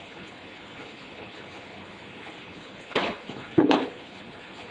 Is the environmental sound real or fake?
fake